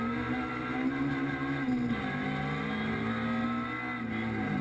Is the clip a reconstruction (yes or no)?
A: no